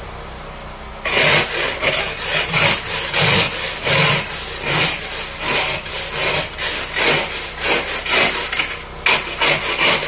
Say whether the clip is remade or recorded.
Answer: recorded